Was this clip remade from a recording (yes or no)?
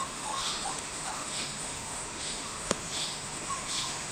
yes